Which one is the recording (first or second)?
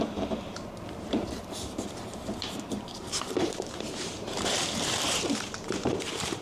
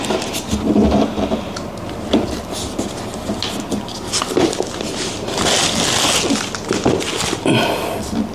second